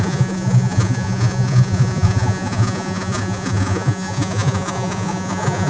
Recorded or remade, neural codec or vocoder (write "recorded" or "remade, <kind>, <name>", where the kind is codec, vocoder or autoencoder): remade, vocoder, Vocos